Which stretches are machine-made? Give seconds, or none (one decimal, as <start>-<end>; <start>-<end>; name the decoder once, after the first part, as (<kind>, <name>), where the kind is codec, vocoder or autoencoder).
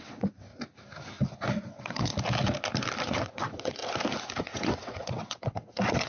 0.0-0.5 (vocoder, WaveNeXt); 1.6-2.1; 3.0-3.8; 4.4-6.1